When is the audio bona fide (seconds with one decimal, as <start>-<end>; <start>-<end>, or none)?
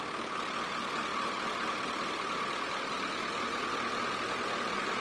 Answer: 0.0-5.0